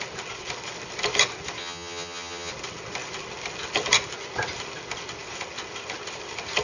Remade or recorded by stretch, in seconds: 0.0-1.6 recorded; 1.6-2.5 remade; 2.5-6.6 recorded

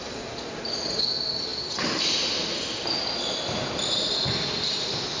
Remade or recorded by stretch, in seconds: 0.0-5.2 recorded

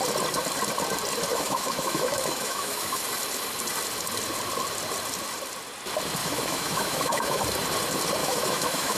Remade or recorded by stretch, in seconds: 0.0-1.3 recorded; 1.3-3.0 remade; 3.0-6.2 recorded; 6.2-7.4 remade; 7.4-8.2 recorded; 8.2-9.0 remade

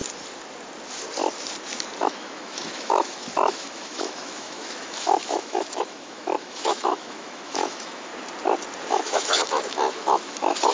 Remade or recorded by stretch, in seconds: 0.0-2.0 recorded; 2.0-8.1 remade; 8.1-8.9 recorded; 8.9-10.7 remade

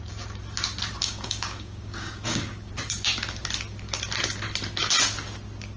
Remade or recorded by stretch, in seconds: 0.0-1.0 recorded; 1.0-2.7 remade; 2.7-5.8 recorded